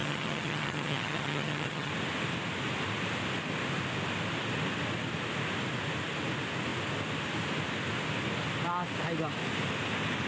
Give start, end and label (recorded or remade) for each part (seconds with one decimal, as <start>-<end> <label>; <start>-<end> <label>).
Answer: 0.0-1.9 remade; 1.9-10.3 recorded

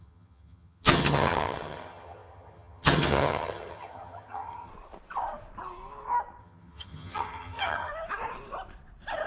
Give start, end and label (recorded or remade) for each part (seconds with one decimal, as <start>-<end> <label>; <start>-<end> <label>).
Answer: 0.0-4.7 remade; 4.7-6.4 recorded; 6.4-7.9 remade; 7.9-9.3 recorded